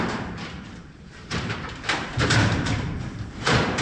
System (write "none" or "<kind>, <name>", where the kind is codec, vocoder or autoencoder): vocoder, BigVGAN v2